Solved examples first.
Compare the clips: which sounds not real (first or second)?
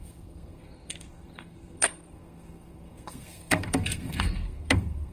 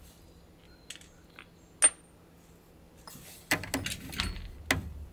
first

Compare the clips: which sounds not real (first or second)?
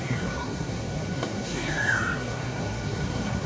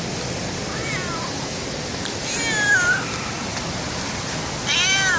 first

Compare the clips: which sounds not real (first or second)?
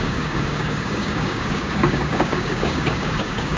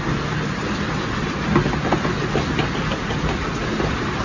first